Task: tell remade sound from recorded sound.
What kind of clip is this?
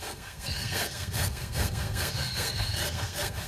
remade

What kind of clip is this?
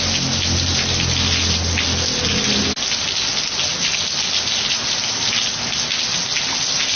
recorded